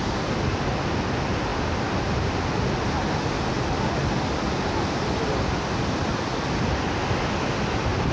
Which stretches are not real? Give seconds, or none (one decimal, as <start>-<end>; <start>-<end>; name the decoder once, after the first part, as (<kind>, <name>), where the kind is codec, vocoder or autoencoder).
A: none